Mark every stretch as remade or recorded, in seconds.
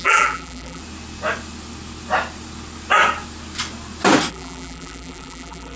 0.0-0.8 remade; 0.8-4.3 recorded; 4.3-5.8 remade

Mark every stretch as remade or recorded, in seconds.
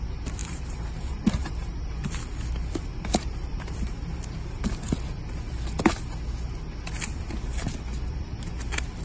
0.0-0.4 recorded; 0.4-2.1 remade; 2.1-2.9 recorded; 2.9-4.6 remade; 4.6-9.0 recorded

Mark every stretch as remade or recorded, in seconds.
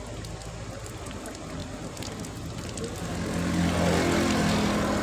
0.0-1.6 recorded; 1.6-2.2 remade; 2.2-5.0 recorded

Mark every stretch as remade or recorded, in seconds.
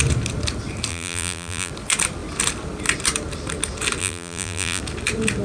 0.0-0.9 recorded; 0.9-1.7 remade; 1.7-4.0 recorded; 4.0-4.8 remade; 4.8-5.4 recorded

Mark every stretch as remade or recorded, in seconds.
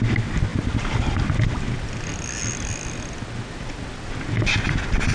0.0-5.1 recorded